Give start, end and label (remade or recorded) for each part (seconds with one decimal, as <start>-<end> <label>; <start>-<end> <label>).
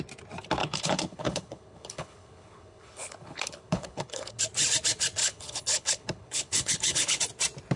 0.0-0.6 recorded; 0.6-4.4 remade; 4.4-5.2 recorded; 5.2-7.2 remade; 7.2-7.8 recorded